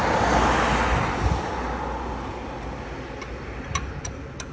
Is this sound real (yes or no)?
yes